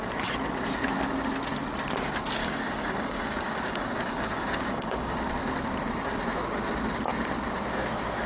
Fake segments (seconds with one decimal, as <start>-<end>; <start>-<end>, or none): 2.4-5.2